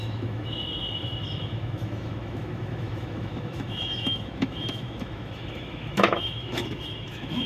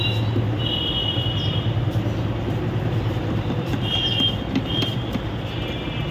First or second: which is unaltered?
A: second